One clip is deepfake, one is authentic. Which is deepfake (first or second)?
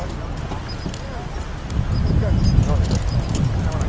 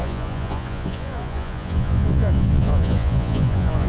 second